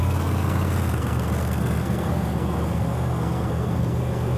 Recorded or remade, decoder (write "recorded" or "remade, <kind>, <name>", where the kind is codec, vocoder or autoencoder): remade, codec, SNAC